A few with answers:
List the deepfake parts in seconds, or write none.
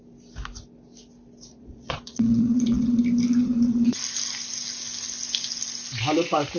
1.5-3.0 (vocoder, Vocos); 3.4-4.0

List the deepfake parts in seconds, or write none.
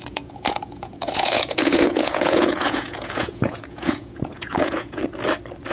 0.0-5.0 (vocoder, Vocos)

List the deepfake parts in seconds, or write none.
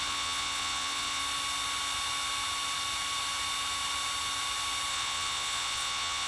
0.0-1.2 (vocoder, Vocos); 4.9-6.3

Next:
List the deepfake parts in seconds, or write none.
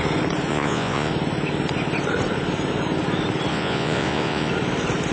0.5-1.1 (vocoder, Vocos); 3.5-4.5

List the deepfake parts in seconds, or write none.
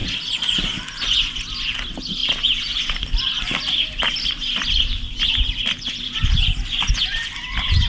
none